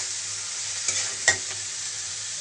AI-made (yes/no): no